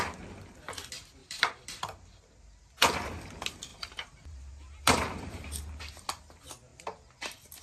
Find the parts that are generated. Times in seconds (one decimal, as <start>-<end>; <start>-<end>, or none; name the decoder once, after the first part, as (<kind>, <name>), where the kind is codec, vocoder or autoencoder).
1.2-2.1 (vocoder, BigVGAN v2); 3.7-5.8

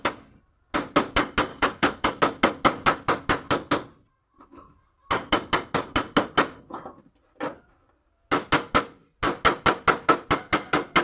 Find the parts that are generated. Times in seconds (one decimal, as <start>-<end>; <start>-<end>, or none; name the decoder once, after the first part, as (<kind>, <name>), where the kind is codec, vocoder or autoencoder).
1.5-2.2 (codec, DAC)

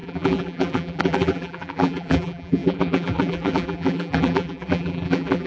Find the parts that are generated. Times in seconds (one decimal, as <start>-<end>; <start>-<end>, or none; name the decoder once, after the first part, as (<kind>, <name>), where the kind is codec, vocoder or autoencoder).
0.0-5.5 (vocoder, BigVGAN v2)

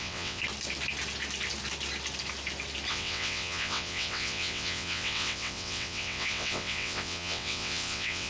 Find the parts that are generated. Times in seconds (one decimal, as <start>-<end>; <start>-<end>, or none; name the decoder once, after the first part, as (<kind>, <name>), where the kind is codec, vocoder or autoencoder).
0.0-0.4 (vocoder, WaveNeXt); 2.9-8.3

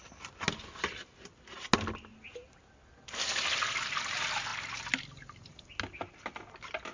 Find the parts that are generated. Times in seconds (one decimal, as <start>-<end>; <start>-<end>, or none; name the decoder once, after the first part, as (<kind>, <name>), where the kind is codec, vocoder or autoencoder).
none

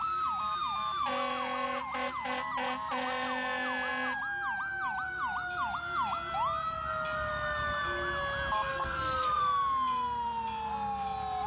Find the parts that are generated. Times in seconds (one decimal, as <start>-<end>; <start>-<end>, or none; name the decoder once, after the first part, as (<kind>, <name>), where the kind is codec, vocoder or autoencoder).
8.7-9.4 (codec, SNAC)